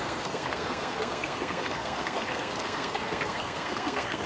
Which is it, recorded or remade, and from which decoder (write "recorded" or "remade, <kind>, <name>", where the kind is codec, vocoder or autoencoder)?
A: remade, codec, SNAC